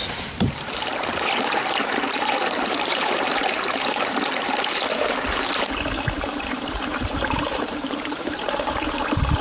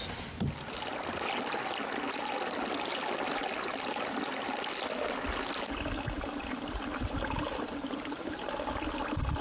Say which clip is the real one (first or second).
second